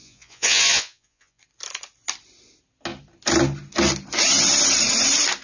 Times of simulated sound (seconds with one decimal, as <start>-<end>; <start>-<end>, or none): 0.0-1.4